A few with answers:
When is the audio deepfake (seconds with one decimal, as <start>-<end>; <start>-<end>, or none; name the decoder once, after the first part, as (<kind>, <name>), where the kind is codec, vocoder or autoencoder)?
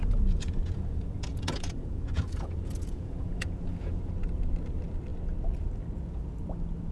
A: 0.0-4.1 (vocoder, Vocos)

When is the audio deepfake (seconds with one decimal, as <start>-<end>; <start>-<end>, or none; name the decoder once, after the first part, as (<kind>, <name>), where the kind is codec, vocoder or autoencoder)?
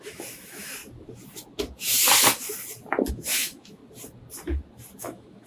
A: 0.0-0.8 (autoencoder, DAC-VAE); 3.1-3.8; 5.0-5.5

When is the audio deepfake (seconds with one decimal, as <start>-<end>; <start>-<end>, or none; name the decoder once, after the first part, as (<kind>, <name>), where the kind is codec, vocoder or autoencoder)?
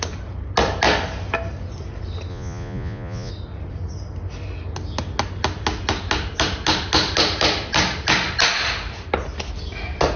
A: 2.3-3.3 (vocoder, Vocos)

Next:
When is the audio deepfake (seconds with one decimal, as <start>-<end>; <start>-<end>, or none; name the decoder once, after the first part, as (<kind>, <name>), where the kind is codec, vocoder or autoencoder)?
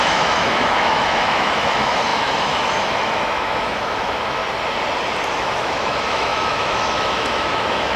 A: 0.0-4.4 (autoencoder, DAC-VAE); 5.3-8.0